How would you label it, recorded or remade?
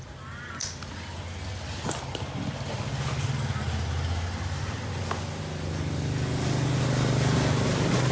recorded